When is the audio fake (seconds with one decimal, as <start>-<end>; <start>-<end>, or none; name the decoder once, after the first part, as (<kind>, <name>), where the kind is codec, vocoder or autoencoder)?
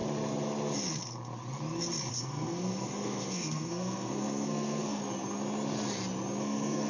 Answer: 2.1-5.0 (codec, SNAC); 6.4-6.9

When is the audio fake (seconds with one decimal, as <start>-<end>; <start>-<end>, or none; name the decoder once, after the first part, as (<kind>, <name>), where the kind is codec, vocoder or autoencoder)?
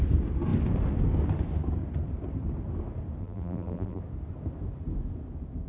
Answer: 3.2-4.0 (vocoder, BigVGAN v2)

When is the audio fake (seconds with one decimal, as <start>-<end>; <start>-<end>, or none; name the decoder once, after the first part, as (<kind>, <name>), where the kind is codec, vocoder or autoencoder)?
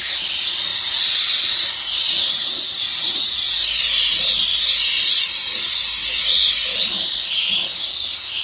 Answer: none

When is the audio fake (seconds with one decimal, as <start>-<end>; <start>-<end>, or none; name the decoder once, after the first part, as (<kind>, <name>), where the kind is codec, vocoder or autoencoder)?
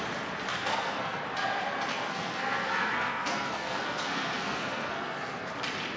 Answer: 0.5-1.2 (codec, SNAC); 1.9-5.5